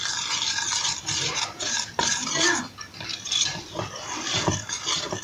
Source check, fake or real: real